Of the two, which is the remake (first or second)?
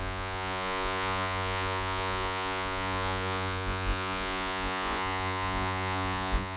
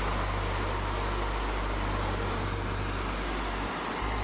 first